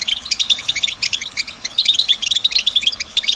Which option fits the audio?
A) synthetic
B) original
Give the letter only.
A